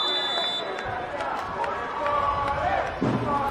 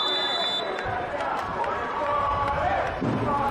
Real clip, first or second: first